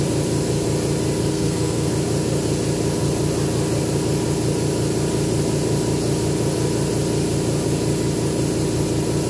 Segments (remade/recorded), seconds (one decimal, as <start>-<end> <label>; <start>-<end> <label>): 0.0-1.3 recorded; 1.3-1.9 remade; 1.9-9.3 recorded